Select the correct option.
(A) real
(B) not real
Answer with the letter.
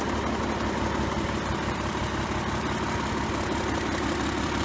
A